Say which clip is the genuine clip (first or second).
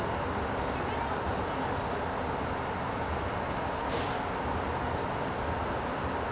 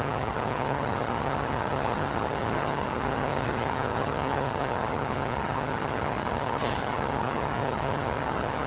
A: first